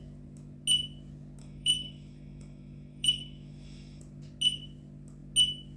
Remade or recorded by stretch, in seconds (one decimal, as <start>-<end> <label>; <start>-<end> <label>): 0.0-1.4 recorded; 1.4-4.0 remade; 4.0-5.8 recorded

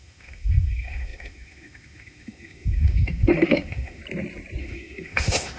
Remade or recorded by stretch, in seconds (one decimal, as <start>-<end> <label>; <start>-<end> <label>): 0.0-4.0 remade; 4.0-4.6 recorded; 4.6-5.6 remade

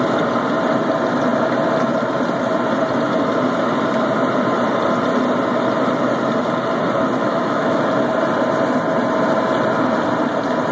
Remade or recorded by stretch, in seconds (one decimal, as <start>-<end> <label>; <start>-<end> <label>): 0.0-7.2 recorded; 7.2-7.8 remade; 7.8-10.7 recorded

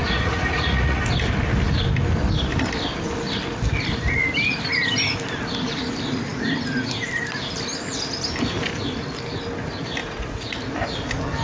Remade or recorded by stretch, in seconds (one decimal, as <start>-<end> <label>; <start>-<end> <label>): 0.0-1.0 remade; 1.0-10.0 recorded; 10.0-10.5 remade; 10.5-11.4 recorded

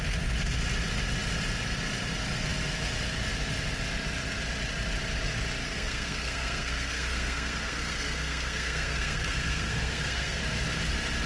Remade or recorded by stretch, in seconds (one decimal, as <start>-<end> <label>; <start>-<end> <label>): 0.0-5.6 recorded; 5.6-10.4 remade; 10.4-11.3 recorded

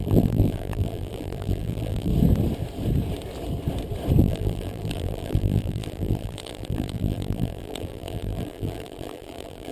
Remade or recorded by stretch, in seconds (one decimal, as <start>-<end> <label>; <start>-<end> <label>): 0.0-2.1 remade; 2.1-4.2 recorded; 4.2-9.7 remade